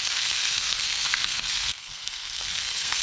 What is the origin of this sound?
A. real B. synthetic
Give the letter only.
B